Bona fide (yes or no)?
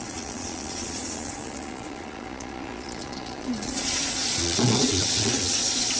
no